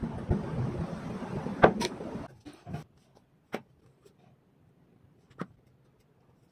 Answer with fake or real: real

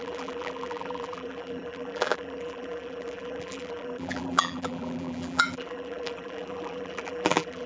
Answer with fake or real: fake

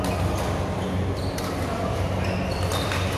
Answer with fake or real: real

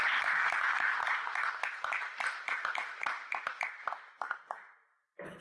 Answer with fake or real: fake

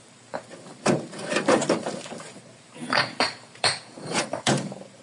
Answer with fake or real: fake